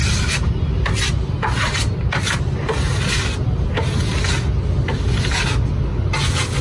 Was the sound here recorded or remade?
recorded